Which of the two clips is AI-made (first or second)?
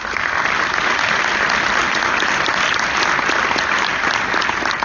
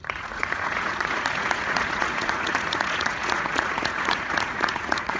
second